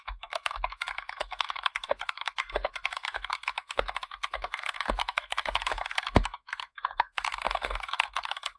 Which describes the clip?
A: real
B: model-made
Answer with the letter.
B